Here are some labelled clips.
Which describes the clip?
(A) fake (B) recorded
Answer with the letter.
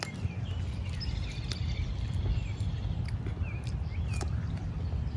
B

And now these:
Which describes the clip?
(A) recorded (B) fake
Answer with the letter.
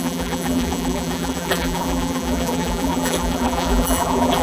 B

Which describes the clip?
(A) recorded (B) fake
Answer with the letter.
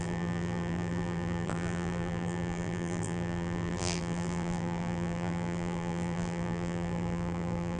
B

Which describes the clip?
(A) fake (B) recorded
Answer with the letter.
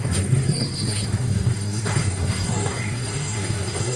A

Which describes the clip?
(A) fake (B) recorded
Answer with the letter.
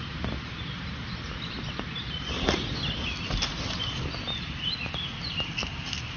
B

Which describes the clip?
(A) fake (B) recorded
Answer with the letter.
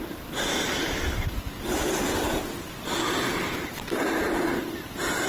B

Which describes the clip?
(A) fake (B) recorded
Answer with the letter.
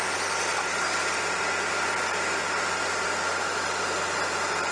B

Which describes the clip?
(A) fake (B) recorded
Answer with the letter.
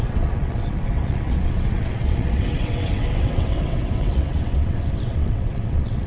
A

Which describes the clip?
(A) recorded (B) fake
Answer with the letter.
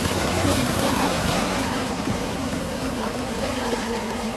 B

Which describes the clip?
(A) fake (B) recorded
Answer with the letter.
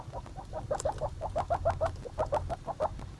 B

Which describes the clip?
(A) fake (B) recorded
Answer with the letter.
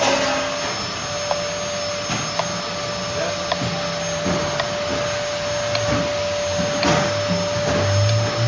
B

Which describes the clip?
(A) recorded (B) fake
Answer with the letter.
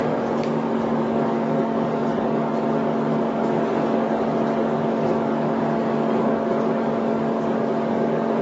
B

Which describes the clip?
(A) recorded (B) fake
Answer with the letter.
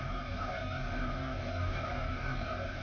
B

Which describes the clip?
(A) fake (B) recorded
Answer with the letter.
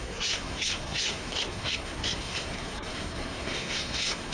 A